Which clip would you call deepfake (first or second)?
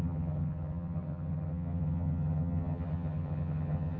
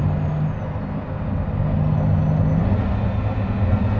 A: first